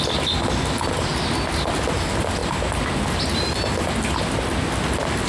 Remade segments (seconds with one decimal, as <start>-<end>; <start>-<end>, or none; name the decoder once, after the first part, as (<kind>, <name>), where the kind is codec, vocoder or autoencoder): none